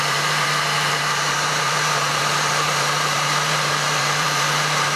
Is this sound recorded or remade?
remade